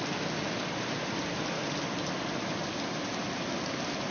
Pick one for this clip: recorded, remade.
recorded